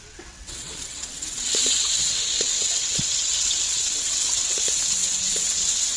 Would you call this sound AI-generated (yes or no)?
yes